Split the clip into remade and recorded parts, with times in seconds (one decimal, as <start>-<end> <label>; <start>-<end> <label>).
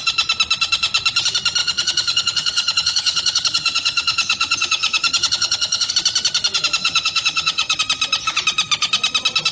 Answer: 0.0-1.6 recorded; 1.6-5.9 remade; 5.9-6.8 recorded; 6.8-7.8 remade; 7.8-9.5 recorded